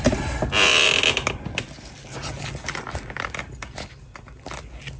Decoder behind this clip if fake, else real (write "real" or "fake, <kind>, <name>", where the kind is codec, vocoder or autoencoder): real